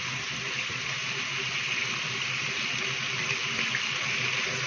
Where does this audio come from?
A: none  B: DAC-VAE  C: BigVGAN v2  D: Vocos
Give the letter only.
A